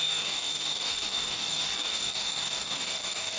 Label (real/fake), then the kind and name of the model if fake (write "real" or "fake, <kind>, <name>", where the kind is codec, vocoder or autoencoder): fake, codec, DAC